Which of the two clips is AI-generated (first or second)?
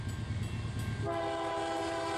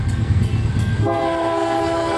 second